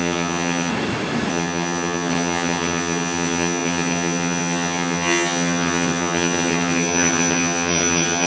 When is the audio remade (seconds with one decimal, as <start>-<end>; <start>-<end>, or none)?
0.0-0.7; 1.3-8.3